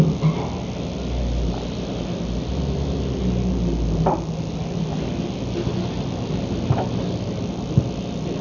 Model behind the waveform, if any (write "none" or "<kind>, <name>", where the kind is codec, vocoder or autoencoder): none